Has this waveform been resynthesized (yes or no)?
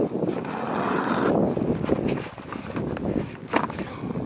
no